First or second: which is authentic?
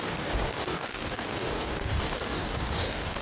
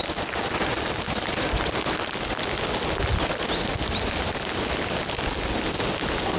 second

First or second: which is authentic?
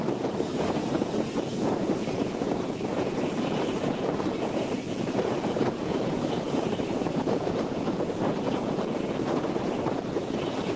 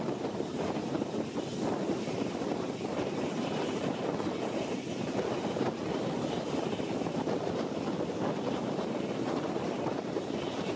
second